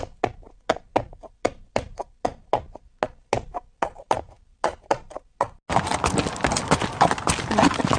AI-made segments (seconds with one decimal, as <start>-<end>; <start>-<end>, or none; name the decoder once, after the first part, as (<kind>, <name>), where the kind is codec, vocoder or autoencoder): none